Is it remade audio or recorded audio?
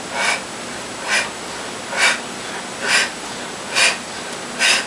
recorded